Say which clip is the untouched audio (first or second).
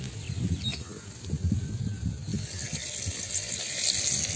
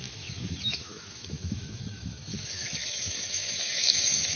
first